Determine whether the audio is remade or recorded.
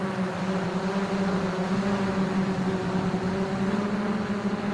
recorded